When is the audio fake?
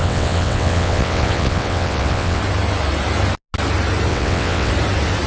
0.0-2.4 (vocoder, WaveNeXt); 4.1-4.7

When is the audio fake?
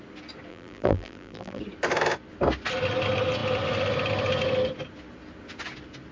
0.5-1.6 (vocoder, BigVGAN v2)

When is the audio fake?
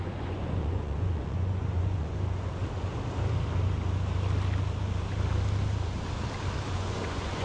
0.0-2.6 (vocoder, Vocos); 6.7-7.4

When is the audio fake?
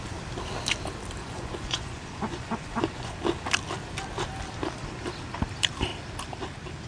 1.2-3.2 (vocoder, Vocos)